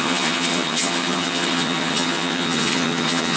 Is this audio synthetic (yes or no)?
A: yes